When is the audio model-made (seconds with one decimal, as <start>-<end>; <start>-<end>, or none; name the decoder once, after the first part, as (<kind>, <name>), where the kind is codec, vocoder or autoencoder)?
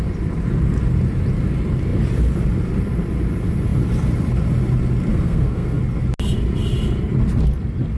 5.1-5.8 (codec, SNAC)